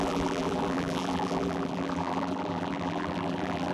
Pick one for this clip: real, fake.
fake